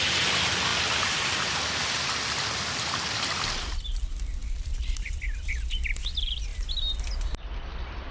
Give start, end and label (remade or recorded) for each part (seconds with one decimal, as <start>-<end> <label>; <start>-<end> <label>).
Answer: 0.0-0.7 recorded; 0.7-1.4 remade; 1.4-4.4 recorded; 4.4-5.5 remade; 5.5-8.1 recorded